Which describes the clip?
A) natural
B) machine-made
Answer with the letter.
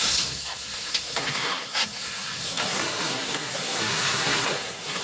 B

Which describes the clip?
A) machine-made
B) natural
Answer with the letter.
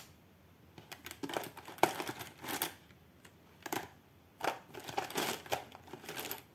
B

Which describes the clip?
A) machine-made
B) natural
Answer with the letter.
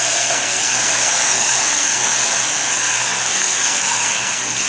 A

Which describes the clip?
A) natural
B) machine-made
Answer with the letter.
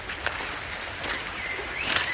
A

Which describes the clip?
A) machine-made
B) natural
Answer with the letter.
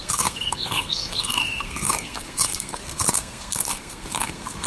A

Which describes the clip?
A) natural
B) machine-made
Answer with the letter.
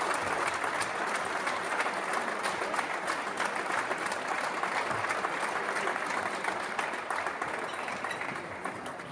A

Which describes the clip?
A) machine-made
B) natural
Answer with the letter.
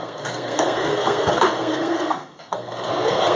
A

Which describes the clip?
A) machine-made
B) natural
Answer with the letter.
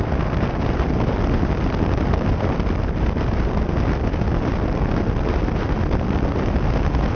B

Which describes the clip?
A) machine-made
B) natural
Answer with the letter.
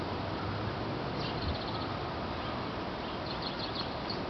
B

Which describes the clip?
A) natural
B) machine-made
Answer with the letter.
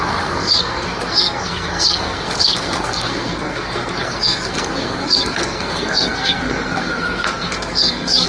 B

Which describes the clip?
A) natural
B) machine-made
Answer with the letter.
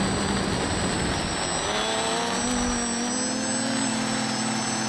A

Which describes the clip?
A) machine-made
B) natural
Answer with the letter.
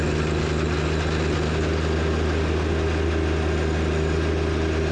B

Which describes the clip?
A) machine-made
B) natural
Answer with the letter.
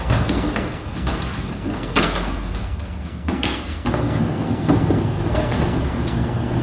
A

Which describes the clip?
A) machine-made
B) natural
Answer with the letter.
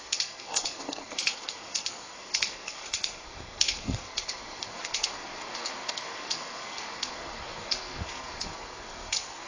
A